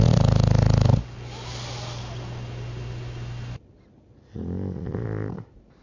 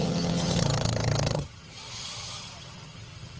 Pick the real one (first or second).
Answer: first